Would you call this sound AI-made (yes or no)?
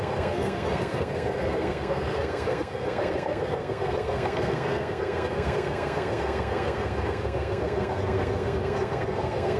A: yes